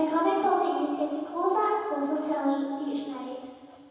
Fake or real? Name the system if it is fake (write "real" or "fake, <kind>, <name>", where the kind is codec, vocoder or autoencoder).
real